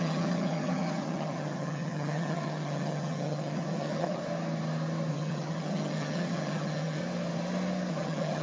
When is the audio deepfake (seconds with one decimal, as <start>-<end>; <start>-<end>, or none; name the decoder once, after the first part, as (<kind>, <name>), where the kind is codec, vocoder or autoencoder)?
0.0-4.2 (vocoder, HiFi-GAN); 5.1-7.0; 7.9-8.4